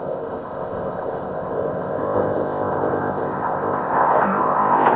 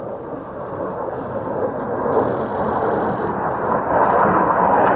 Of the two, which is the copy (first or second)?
first